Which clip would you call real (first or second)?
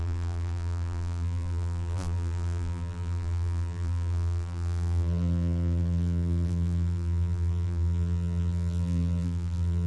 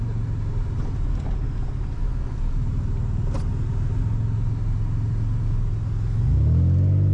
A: second